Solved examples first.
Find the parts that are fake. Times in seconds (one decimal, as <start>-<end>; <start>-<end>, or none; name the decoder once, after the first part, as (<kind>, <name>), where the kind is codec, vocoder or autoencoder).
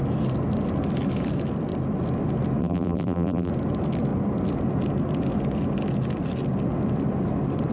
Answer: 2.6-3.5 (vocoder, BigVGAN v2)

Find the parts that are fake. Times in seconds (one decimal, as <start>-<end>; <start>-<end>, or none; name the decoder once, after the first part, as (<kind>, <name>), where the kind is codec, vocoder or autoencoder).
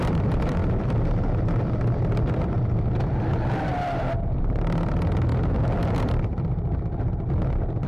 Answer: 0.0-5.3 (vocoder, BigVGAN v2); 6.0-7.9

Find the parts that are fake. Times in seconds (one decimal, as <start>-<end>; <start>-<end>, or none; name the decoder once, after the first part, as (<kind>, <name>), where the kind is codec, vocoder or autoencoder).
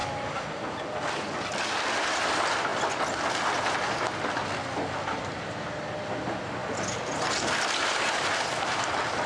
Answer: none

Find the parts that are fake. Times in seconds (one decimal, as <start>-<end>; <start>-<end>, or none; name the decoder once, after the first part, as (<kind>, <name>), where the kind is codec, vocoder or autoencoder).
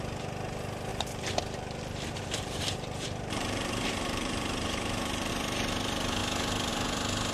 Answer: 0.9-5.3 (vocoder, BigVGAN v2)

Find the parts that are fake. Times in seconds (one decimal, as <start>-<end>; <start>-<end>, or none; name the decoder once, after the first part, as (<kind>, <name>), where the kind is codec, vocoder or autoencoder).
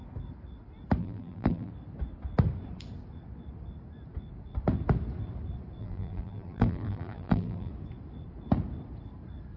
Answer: 1.0-1.7 (vocoder, BigVGAN v2); 5.8-7.7